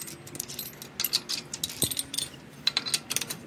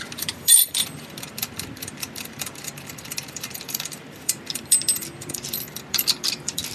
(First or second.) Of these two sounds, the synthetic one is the second